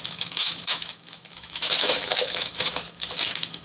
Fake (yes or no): yes